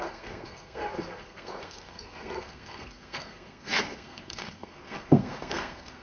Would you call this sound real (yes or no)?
no